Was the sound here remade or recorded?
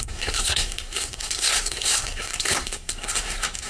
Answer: remade